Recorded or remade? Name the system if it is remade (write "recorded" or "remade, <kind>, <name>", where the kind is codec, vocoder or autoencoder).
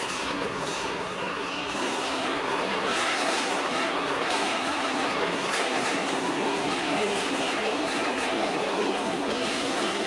remade, codec, SNAC